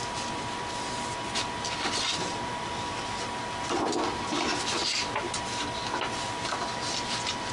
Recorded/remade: recorded